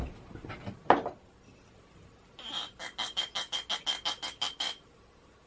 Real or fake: real